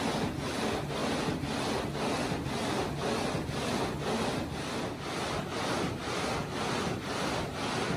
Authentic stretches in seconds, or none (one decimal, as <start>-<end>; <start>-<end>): 0.0-8.0